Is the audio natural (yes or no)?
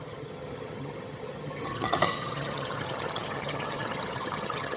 no